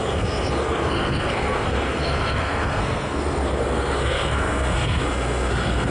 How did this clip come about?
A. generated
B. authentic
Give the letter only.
A